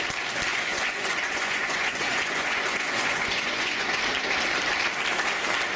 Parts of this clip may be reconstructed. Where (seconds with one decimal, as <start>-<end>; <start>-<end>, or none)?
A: 0.5-4.0